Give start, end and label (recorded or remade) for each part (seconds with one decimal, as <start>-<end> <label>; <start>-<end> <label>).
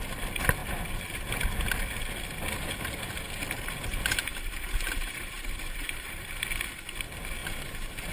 0.0-4.3 recorded; 4.3-6.4 remade; 6.4-7.4 recorded; 7.4-8.1 remade